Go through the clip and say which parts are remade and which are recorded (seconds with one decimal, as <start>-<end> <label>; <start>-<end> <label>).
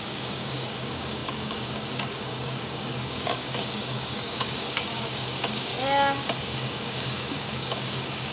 0.0-5.7 remade; 5.7-6.4 recorded; 6.4-8.3 remade